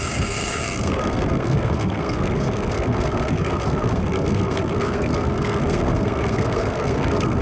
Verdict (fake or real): fake